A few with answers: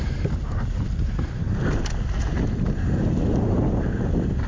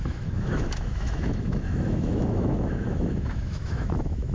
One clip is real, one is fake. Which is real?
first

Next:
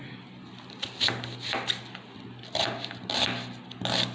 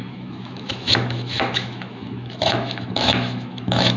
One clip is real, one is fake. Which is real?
first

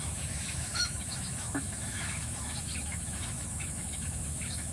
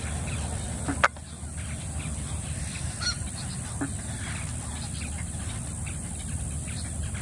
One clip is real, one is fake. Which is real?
second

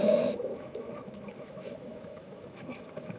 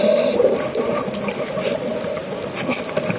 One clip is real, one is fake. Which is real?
second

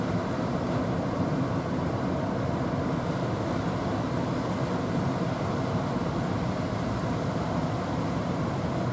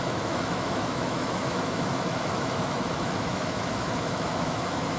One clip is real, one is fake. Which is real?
first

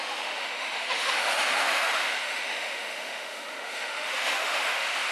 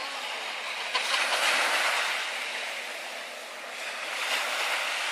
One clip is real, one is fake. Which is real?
second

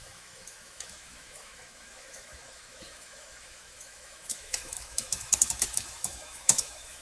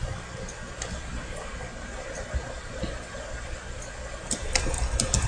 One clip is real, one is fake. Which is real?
second